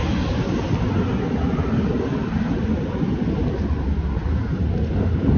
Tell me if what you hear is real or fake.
real